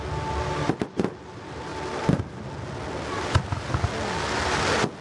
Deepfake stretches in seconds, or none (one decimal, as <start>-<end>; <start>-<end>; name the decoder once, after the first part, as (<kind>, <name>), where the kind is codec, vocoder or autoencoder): none